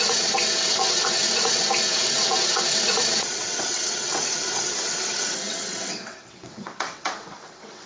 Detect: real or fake fake